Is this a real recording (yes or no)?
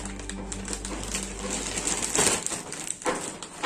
yes